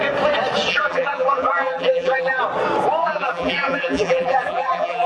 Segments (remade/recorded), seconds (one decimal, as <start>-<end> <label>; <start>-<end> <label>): 0.0-0.7 recorded; 0.7-2.4 remade; 2.4-3.0 recorded; 3.0-5.1 remade